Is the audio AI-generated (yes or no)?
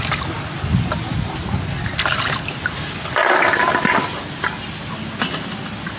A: no